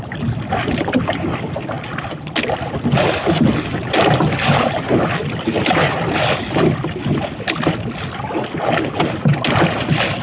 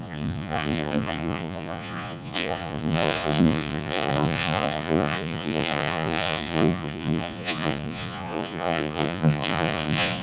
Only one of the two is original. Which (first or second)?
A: first